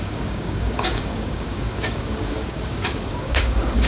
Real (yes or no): no